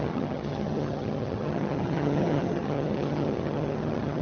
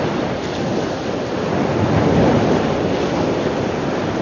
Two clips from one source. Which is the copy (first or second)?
first